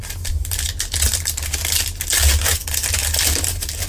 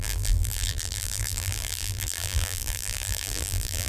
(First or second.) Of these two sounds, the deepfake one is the second